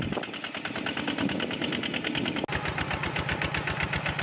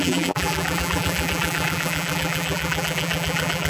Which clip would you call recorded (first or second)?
first